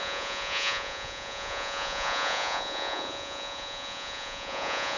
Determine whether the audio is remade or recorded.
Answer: remade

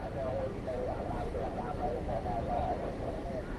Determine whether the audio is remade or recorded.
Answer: remade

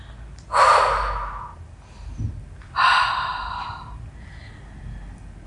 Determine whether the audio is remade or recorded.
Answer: recorded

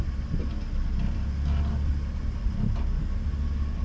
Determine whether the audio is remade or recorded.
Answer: recorded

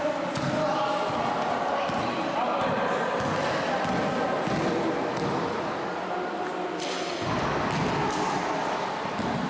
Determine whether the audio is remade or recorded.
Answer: recorded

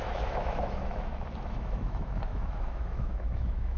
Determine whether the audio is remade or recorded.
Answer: remade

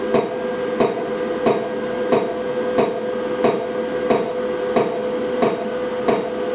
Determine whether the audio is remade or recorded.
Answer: recorded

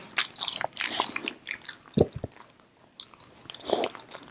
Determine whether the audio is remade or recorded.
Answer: recorded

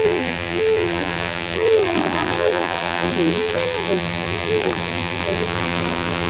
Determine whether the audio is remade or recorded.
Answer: remade